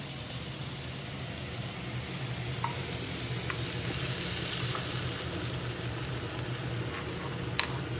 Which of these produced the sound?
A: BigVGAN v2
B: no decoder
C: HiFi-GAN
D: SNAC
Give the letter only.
B